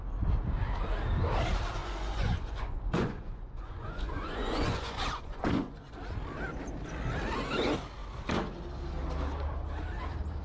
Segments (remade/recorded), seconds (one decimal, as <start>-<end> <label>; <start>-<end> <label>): 0.0-1.8 recorded; 1.8-5.9 remade; 5.9-10.4 recorded